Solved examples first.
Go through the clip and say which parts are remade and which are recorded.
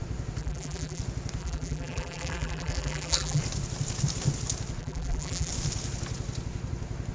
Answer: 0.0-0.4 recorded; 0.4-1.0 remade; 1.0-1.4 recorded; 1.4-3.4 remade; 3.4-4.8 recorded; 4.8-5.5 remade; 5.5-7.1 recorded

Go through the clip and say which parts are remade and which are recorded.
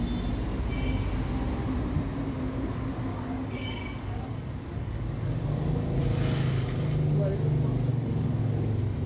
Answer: 0.0-3.1 recorded; 3.1-6.0 remade; 6.0-7.9 recorded; 7.9-8.5 remade; 8.5-9.1 recorded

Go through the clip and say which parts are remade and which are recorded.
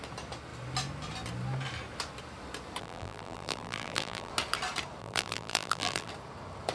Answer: 0.0-2.8 recorded; 2.8-4.3 remade; 4.3-5.0 recorded; 5.0-6.1 remade; 6.1-6.7 recorded